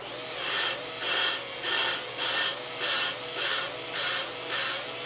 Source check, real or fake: real